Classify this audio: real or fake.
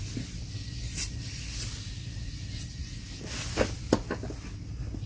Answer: real